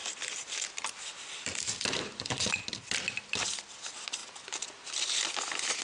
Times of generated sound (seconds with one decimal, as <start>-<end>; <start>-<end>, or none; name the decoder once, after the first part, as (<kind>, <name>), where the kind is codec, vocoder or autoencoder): none